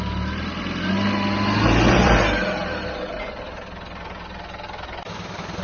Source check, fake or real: real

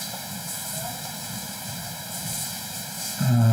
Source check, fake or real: fake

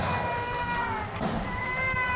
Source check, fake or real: real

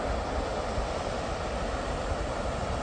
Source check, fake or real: real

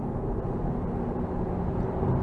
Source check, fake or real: real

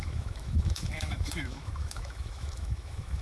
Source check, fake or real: fake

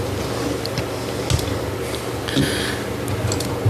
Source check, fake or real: real